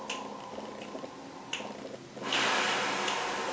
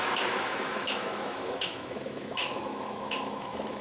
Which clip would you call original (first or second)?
first